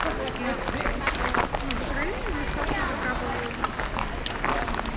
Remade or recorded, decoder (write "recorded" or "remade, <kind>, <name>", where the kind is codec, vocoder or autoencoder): recorded